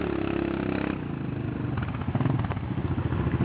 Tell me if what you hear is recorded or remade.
recorded